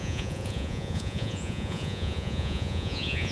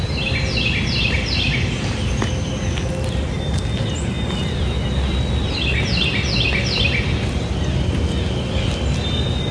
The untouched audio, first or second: second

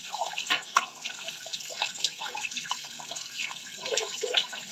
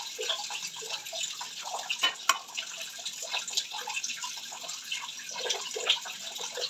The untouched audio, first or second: second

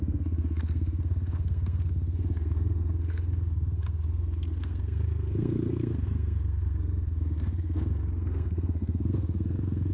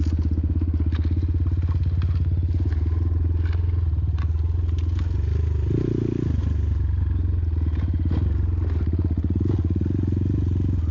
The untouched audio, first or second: second